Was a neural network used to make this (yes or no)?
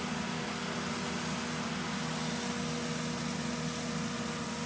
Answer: no